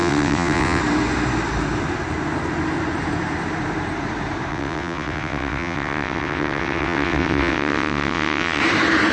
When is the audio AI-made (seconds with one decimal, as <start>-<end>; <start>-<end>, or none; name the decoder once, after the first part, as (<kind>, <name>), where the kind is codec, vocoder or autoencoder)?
0.0-0.8 (vocoder, WaveNeXt); 4.5-8.6